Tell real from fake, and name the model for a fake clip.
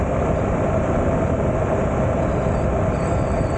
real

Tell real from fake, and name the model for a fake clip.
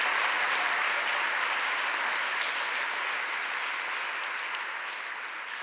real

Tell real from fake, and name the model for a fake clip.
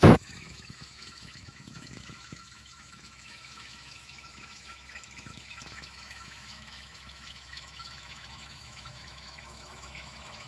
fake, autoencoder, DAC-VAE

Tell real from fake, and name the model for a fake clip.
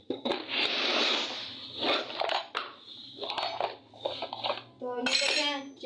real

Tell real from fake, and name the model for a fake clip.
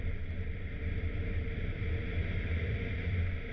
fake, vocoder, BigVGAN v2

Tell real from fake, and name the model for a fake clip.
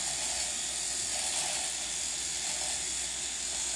real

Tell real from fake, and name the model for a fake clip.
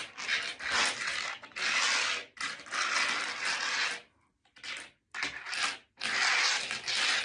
real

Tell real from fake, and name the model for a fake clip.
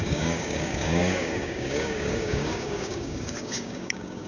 fake, codec, DAC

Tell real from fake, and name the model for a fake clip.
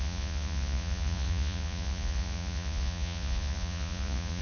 fake, vocoder, Vocos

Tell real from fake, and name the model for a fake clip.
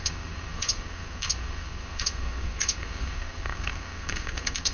fake, codec, SNAC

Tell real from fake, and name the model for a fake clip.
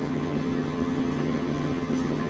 fake, vocoder, HiFi-GAN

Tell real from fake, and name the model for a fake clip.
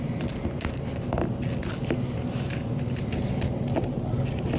real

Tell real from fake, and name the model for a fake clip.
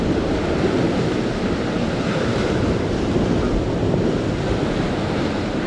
real